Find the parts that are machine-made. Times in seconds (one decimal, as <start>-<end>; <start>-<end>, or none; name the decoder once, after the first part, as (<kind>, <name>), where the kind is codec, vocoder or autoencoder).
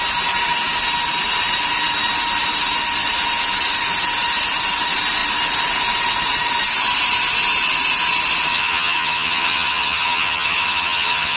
8.5-11.4 (vocoder, HiFi-GAN)